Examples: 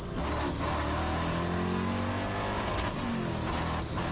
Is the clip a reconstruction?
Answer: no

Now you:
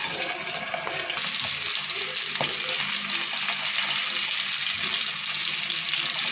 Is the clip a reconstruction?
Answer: no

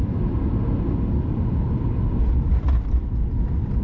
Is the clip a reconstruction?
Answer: yes